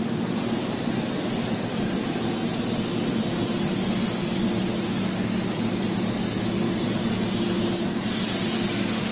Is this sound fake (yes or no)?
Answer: no